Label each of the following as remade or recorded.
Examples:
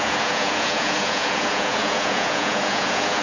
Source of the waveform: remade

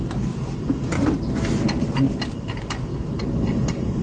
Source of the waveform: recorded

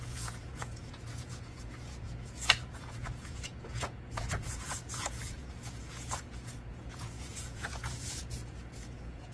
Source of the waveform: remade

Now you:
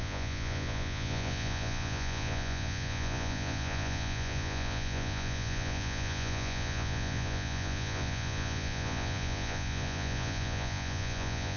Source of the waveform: remade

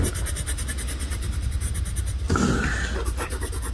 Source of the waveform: recorded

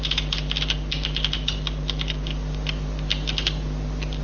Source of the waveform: recorded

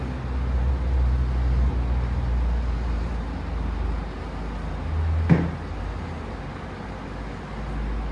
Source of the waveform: recorded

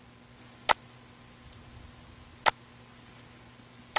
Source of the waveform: recorded